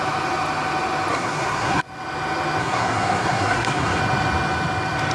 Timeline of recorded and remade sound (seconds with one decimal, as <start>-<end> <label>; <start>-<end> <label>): 0.0-1.1 recorded; 1.1-1.8 remade; 1.8-2.6 recorded; 2.6-4.0 remade; 4.0-5.1 recorded